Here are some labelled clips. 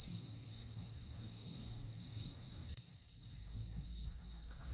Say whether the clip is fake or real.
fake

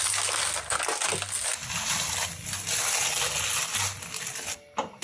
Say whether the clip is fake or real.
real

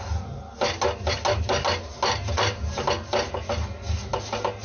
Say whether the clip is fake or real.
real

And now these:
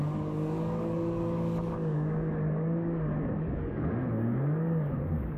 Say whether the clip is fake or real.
fake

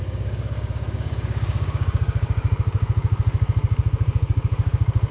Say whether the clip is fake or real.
fake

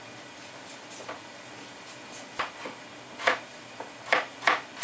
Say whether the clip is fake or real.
real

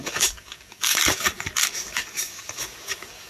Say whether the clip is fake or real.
fake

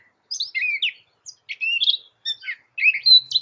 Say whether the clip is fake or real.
real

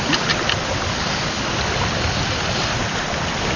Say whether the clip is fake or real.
real